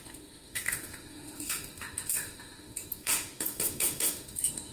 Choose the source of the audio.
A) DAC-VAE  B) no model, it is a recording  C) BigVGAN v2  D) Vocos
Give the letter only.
A